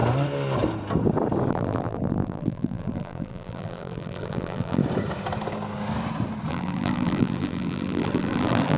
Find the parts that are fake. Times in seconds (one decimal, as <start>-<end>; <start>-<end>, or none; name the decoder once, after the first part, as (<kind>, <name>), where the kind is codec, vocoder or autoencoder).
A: 1.5-4.8 (vocoder, BigVGAN v2); 6.5-8.8